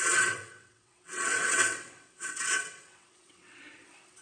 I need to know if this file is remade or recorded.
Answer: remade